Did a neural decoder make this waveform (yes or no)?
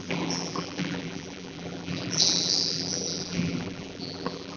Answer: yes